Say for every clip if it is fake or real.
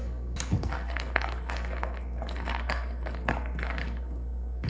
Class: fake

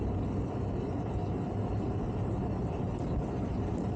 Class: real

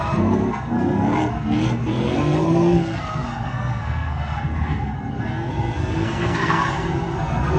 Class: fake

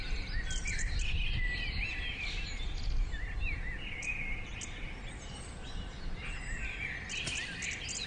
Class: real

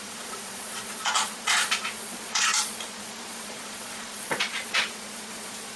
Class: fake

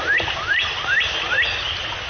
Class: real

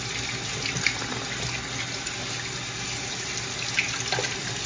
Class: real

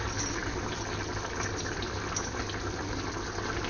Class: real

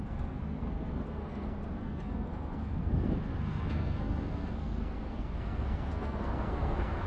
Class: fake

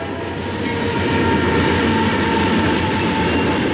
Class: real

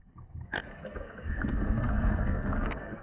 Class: fake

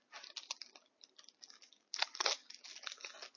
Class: real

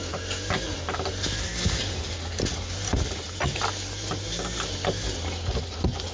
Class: real